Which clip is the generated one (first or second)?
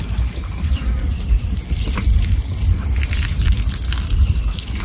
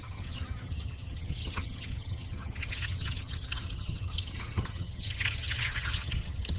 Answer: second